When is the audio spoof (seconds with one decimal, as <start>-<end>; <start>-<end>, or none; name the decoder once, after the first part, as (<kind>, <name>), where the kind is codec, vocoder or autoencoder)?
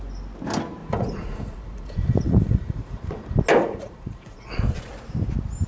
0.8-3.0 (vocoder, Vocos); 3.6-4.5